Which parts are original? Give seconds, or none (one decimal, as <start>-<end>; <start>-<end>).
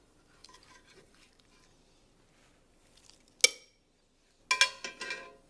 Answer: 0.0-0.4; 1.2-5.5